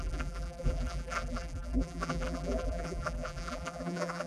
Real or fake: fake